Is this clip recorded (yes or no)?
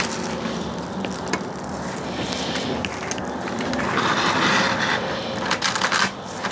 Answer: yes